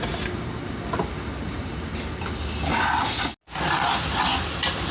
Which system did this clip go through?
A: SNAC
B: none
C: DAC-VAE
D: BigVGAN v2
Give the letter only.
B